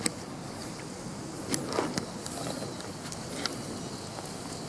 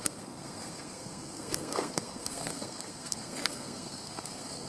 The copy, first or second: second